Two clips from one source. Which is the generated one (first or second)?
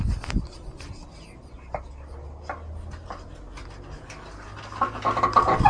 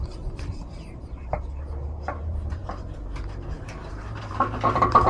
second